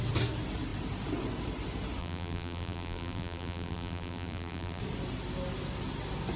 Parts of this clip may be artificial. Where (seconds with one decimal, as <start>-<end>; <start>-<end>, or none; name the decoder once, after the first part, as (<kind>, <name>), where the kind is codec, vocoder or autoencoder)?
2.0-4.8 (vocoder, BigVGAN v2)